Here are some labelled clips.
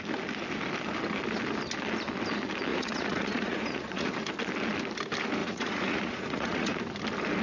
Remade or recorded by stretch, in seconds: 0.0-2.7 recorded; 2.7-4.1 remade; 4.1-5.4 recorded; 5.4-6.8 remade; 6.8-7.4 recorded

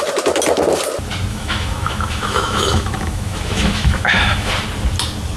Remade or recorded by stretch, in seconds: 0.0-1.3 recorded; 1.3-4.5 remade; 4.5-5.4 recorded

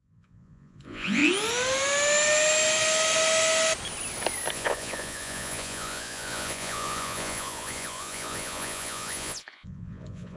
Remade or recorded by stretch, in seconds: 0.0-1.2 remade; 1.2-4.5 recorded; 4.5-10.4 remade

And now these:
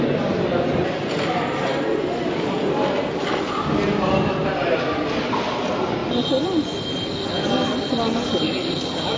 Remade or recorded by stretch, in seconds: 0.0-9.2 recorded

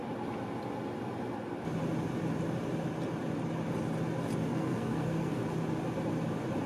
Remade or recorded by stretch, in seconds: 0.0-4.5 recorded; 4.5-5.4 remade; 5.4-6.7 recorded